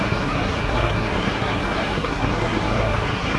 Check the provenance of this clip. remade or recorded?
remade